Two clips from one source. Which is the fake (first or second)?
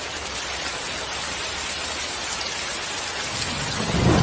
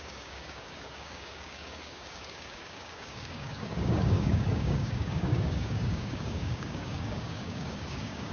second